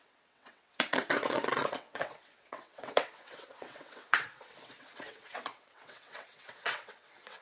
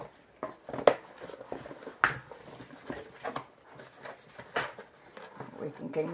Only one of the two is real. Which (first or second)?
second